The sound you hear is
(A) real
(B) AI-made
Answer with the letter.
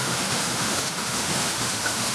B